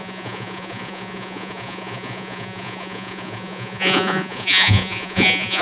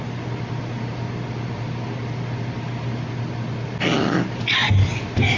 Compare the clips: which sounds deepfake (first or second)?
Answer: first